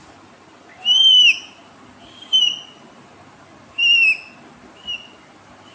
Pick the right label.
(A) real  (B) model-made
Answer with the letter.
A